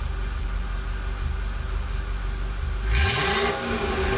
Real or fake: real